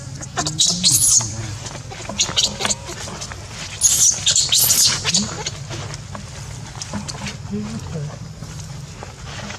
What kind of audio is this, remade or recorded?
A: recorded